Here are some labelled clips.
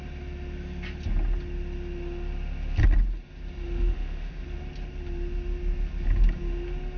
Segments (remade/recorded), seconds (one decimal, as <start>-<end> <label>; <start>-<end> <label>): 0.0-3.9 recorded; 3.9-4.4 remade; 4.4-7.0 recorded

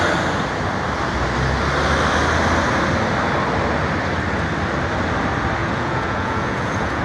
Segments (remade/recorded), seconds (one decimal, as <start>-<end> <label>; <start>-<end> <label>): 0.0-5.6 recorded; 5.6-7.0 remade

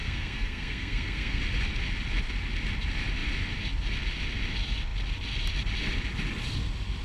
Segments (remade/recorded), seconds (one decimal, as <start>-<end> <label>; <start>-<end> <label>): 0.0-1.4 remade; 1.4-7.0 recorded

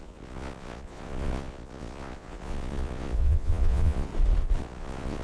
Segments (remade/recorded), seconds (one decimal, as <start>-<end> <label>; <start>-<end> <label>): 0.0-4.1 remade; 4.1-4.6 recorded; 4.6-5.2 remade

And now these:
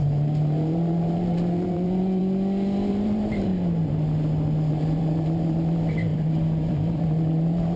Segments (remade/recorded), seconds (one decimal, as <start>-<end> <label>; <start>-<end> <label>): 0.0-2.2 remade; 2.2-2.9 recorded; 2.9-3.5 remade; 3.5-4.7 recorded; 4.7-7.8 remade

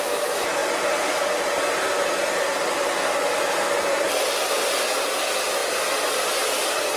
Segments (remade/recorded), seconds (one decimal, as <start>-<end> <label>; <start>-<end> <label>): 0.0-7.0 recorded

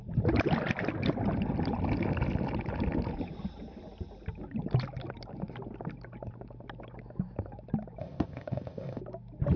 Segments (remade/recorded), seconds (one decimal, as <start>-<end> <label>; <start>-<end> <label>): 0.0-8.0 recorded; 8.0-9.0 remade; 9.0-9.6 recorded

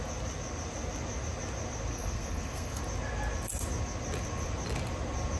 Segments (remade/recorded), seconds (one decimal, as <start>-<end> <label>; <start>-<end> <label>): 0.0-1.9 recorded; 1.9-2.8 remade; 2.8-5.4 recorded